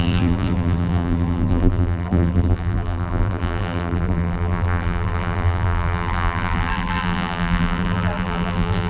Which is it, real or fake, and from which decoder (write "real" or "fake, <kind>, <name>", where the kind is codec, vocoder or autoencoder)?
fake, vocoder, BigVGAN v2